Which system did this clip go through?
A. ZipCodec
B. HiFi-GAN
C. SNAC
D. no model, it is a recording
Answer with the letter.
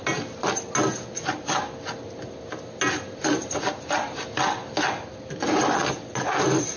D